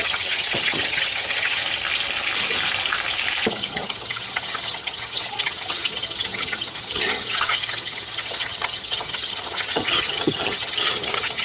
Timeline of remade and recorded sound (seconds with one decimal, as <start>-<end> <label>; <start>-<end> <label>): 0.0-1.6 remade; 1.6-3.5 recorded; 3.5-11.4 remade